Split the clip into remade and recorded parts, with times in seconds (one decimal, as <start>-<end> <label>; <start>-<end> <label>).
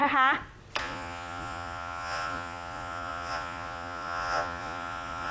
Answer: 0.0-0.8 recorded; 0.8-5.3 remade